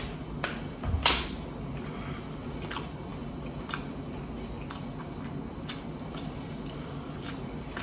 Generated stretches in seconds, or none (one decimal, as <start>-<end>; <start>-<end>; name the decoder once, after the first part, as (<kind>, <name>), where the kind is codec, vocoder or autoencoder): none